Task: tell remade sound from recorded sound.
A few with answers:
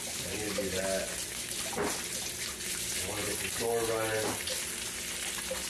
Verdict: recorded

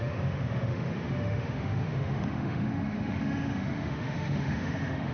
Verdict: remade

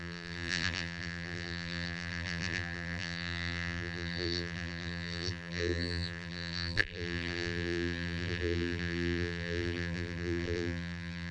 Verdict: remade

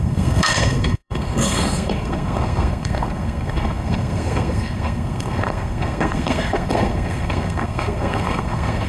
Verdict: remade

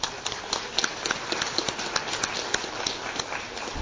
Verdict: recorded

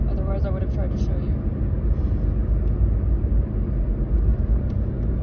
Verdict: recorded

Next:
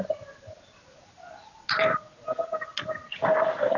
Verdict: recorded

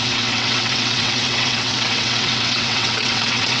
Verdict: remade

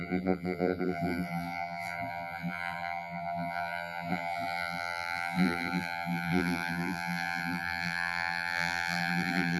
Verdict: remade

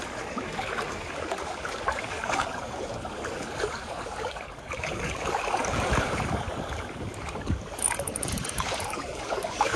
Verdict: remade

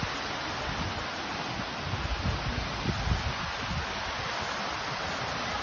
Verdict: recorded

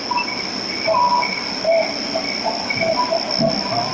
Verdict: recorded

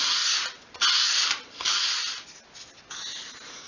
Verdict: recorded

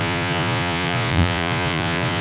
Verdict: remade